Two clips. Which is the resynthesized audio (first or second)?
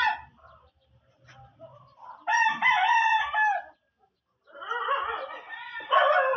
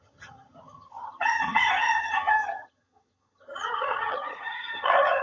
second